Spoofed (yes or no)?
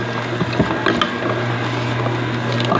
no